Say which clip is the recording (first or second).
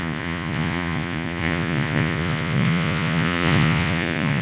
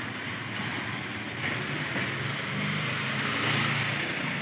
second